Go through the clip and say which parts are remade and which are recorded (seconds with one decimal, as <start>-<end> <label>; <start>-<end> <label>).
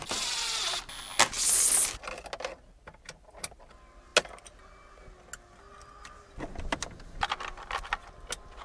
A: 0.0-8.6 recorded